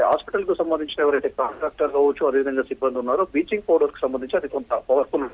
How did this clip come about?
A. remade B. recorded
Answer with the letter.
B